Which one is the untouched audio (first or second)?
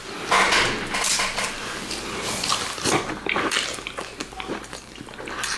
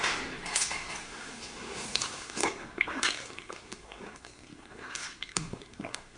first